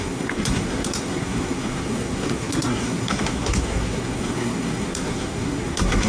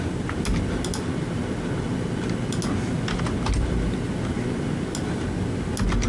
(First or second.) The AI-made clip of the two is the first